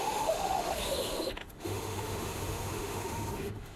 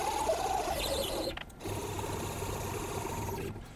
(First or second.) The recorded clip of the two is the second